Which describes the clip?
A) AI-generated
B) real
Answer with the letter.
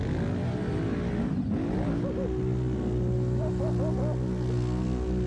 B